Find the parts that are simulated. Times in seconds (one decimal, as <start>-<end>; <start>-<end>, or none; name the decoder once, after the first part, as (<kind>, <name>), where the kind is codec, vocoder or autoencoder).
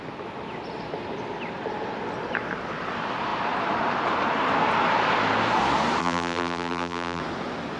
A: 6.0-7.2 (vocoder, BigVGAN v2)